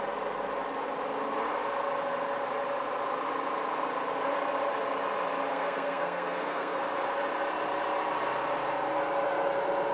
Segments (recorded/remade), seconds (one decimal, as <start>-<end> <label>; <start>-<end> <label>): 0.0-5.5 recorded; 5.5-6.8 remade; 6.8-9.9 recorded